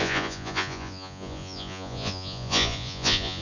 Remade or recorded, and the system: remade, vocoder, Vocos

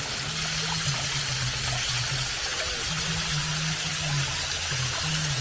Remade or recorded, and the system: recorded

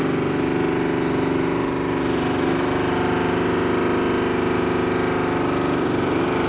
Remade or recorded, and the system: recorded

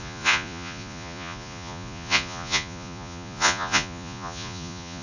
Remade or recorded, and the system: remade, vocoder, Vocos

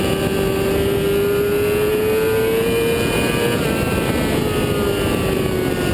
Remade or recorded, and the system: recorded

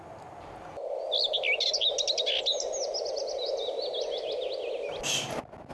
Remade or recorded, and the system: recorded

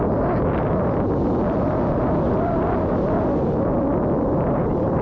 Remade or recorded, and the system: recorded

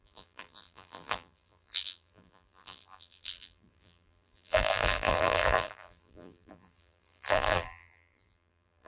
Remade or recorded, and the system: remade, vocoder, BigVGAN v2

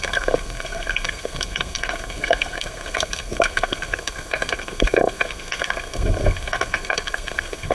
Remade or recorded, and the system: remade, codec, SNAC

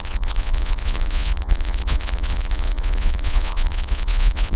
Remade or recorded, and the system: remade, vocoder, Vocos